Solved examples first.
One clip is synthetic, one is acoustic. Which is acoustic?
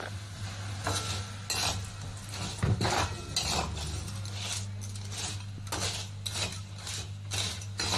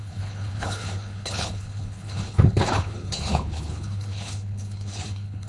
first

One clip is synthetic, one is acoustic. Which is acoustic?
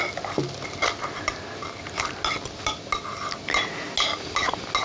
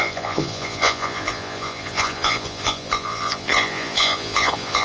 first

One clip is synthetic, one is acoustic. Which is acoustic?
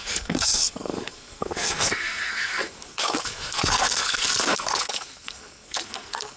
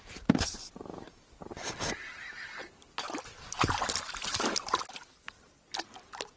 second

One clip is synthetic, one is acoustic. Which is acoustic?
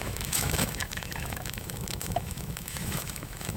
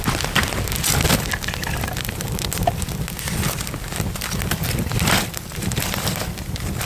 second